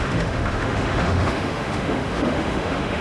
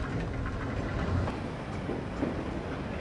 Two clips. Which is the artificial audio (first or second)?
first